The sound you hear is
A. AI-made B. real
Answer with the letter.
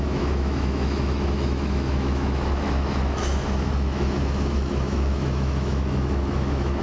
A